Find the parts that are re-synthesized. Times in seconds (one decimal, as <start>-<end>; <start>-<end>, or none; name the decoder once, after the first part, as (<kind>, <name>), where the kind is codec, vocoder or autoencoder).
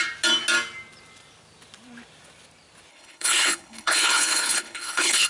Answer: 2.9-5.3 (codec, HILCodec)